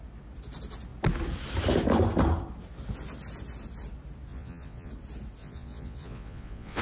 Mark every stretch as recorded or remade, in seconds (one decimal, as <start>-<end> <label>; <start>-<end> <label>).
0.0-4.3 recorded; 4.3-4.9 remade; 4.9-5.4 recorded; 5.4-6.8 remade